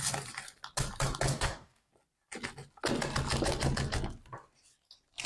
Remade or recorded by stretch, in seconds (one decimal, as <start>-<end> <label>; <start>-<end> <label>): 0.0-1.3 recorded; 1.3-1.9 remade; 1.9-5.3 recorded